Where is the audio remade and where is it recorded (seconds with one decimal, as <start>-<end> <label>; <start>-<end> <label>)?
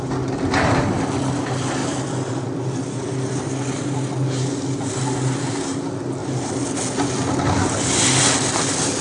0.0-9.0 recorded